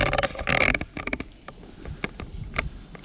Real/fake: real